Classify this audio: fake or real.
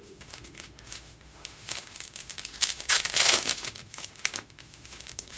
fake